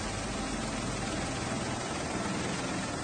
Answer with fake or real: real